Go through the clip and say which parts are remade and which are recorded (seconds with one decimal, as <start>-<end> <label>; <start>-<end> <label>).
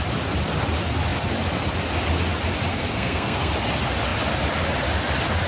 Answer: 0.0-2.7 recorded; 2.7-3.5 remade; 3.5-5.5 recorded